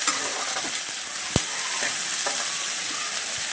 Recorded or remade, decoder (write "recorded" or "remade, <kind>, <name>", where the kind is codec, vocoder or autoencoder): recorded